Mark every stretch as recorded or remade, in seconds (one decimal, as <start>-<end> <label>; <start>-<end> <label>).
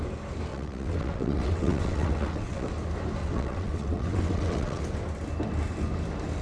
0.0-0.5 recorded; 0.5-2.7 remade; 2.7-3.2 recorded; 3.2-4.8 remade; 4.8-6.4 recorded